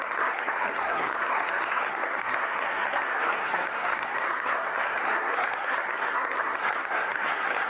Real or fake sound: fake